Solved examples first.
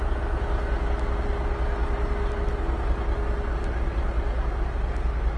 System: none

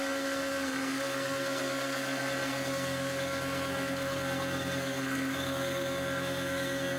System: codec, SNAC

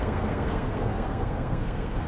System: codec, SNAC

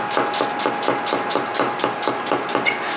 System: none